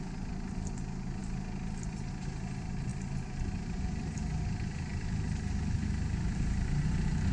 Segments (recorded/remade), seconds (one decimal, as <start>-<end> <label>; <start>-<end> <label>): 0.0-7.3 recorded